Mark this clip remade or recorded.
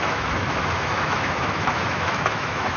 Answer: remade